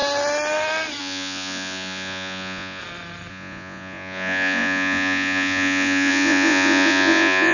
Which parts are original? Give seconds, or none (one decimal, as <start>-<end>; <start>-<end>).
0.0-1.0; 2.8-3.3